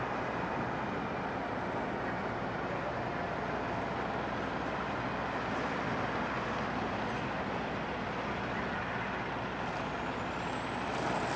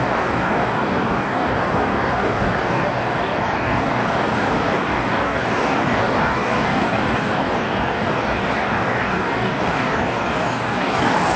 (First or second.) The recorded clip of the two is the first